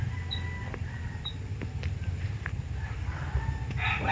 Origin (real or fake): real